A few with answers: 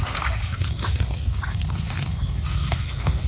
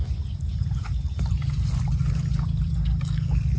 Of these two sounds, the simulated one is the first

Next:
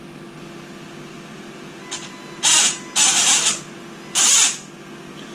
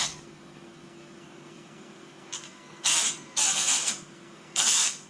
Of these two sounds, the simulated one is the second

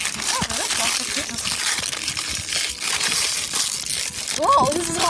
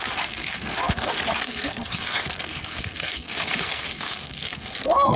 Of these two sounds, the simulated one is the second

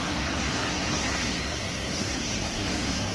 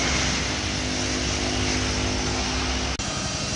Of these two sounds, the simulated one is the first